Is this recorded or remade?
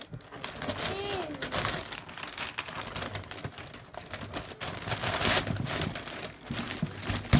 recorded